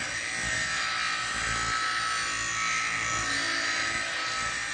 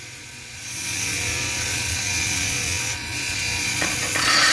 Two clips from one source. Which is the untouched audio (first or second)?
first